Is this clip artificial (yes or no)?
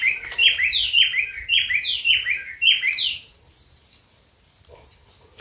no